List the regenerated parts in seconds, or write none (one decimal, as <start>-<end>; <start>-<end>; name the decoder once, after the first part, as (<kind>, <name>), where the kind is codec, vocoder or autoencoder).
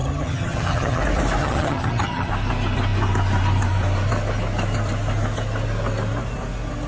0.0-1.0 (vocoder, HiFi-GAN); 1.4-2.3